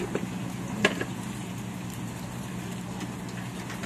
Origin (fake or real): real